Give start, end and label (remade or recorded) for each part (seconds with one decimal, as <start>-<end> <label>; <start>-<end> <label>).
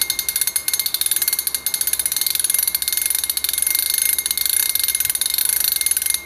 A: 0.0-6.3 recorded